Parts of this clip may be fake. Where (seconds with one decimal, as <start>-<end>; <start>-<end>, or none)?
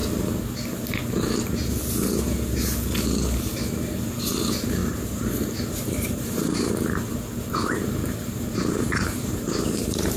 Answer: 4.2-10.2